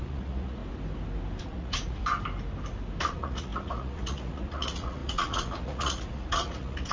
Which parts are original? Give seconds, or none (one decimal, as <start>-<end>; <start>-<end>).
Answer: 0.6-1.4; 2.0-3.0